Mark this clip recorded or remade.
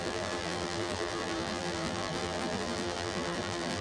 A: remade